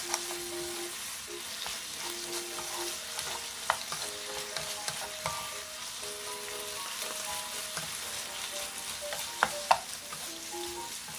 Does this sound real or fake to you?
real